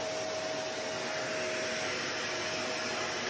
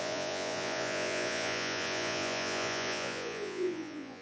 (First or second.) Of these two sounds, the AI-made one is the second